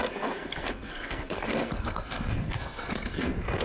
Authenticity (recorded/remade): remade